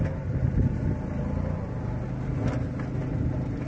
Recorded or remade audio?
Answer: recorded